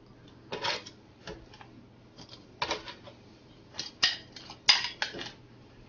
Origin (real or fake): real